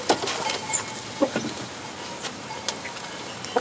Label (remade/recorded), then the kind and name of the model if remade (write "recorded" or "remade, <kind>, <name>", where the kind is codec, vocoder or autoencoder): recorded